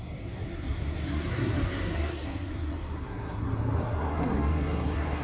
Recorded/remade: remade